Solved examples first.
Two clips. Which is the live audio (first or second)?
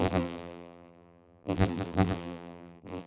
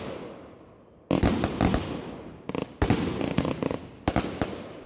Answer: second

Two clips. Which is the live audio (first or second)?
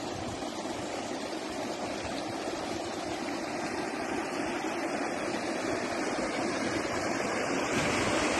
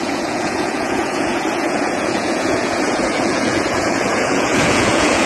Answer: first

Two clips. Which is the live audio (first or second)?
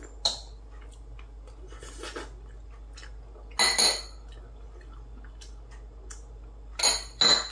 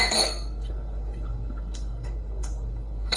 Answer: first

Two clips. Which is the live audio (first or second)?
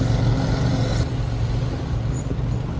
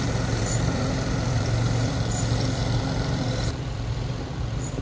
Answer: first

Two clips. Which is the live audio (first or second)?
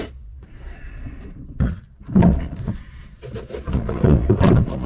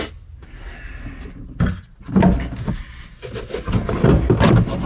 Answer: second